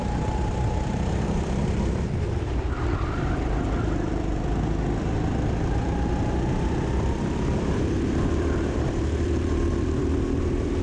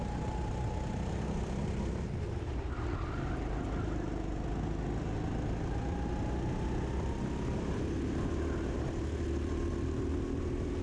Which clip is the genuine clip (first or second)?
second